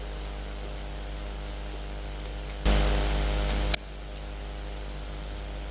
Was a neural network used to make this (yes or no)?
no